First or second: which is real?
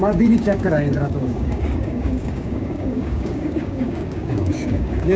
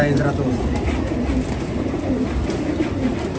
second